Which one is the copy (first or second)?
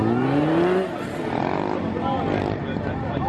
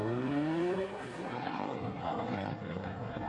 second